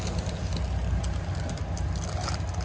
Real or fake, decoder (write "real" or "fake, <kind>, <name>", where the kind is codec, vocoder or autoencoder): real